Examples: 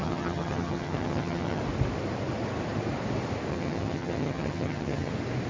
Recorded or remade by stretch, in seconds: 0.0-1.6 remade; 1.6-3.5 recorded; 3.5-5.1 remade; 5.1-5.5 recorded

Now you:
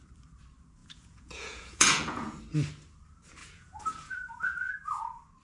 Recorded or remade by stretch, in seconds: 0.0-0.8 recorded; 0.8-2.4 remade; 2.4-3.4 recorded; 3.4-4.7 remade; 4.7-5.4 recorded

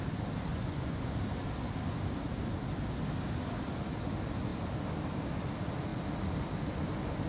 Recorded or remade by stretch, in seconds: 0.0-0.5 recorded; 0.5-1.1 remade; 1.1-7.3 recorded

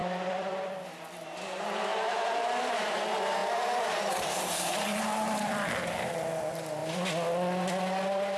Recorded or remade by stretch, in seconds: 0.0-1.9 recorded; 1.9-2.6 remade; 2.6-3.4 recorded; 3.4-6.1 remade; 6.1-8.4 recorded

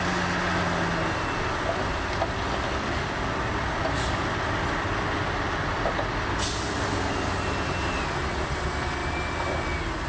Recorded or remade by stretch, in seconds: 0.0-10.1 recorded

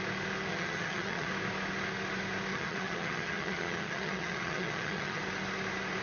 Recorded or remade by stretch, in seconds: 0.0-0.5 recorded; 0.5-1.3 remade; 1.3-2.5 recorded; 2.5-5.2 remade; 5.2-6.0 recorded

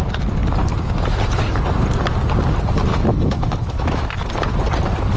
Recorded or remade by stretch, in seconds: 0.0-2.9 recorded; 2.9-4.3 remade; 4.3-5.2 recorded

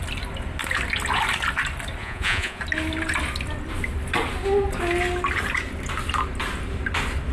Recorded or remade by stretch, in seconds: 0.0-2.0 recorded; 2.0-2.6 remade; 2.6-7.3 recorded